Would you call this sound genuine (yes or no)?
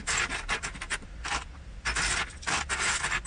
yes